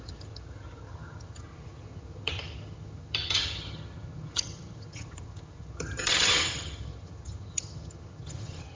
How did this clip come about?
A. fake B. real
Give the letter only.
A